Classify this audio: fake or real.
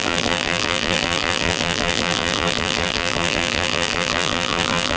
fake